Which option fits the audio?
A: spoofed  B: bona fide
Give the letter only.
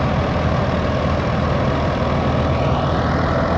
B